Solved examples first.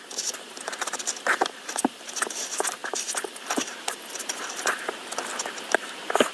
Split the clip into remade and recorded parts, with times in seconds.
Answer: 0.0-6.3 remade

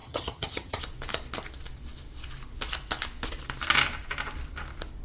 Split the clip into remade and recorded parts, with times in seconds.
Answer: 0.0-0.8 remade; 0.8-5.0 recorded